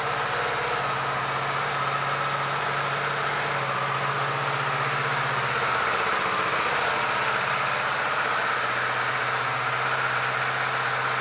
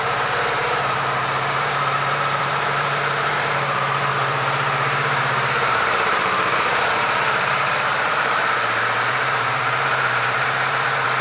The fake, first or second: second